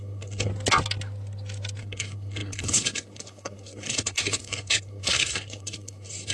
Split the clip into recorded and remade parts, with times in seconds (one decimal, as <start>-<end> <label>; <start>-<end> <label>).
0.0-0.5 remade; 0.5-1.8 recorded; 1.8-6.3 remade